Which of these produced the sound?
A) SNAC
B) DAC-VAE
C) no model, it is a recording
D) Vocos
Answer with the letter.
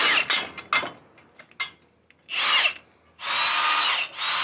C